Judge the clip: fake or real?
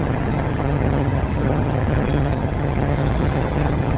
fake